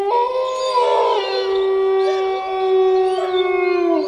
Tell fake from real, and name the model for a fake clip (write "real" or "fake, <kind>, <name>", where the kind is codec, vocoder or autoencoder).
real